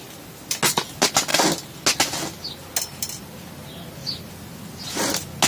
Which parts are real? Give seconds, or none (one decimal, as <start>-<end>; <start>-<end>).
0.0-5.5